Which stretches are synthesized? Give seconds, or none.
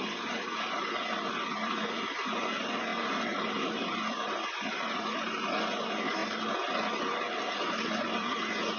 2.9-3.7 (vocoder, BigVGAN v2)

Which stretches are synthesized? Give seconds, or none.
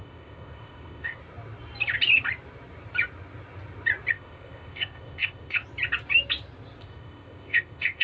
0.0-1.2 (codec, ZipCodec); 4.1-5.6; 6.8-8.0